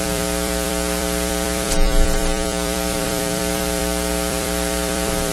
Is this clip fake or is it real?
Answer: fake